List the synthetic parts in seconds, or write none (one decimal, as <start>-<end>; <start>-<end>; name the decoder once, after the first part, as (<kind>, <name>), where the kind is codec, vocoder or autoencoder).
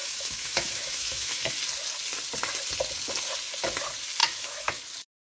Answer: 0.0-1.5 (autoencoder, DAC-VAE); 4.2-4.8